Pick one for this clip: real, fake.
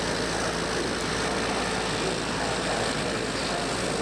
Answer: real